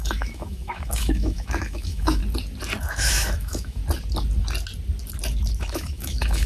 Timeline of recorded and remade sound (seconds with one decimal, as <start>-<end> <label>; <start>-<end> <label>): 0.0-2.2 remade; 2.2-2.8 recorded; 2.8-3.8 remade; 3.8-5.6 recorded; 5.6-6.5 remade